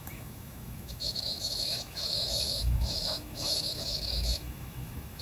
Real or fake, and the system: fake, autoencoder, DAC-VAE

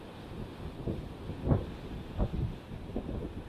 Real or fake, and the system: real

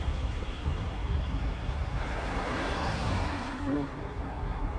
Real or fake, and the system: fake, codec, SNAC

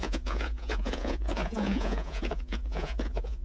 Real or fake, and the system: fake, vocoder, Vocos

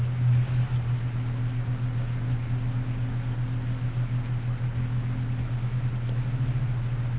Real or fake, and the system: real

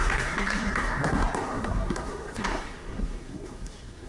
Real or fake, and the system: fake, codec, SNAC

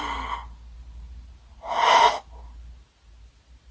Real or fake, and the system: real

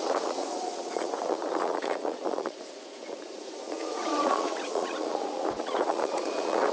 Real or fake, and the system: fake, vocoder, Vocos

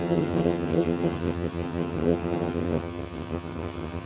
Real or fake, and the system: fake, vocoder, HiFi-GAN